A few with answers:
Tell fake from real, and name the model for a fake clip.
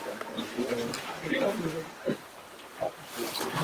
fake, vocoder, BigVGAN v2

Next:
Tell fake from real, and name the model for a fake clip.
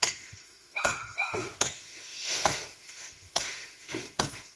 fake, autoencoder, DAC-VAE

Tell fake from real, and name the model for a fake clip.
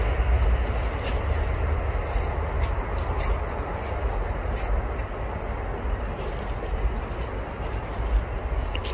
real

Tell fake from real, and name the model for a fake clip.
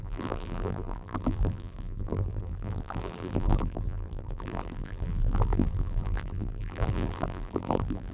fake, vocoder, BigVGAN v2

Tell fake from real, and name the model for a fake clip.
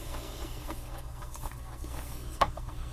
fake, codec, SNAC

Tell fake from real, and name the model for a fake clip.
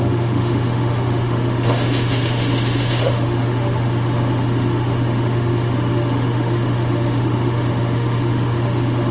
fake, autoencoder, DAC-VAE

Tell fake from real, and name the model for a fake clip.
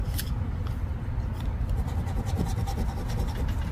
real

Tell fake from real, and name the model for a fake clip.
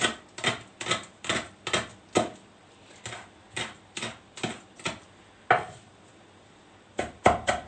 real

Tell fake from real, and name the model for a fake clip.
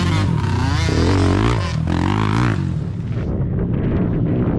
real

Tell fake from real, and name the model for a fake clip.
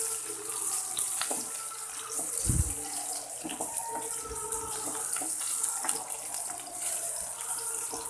real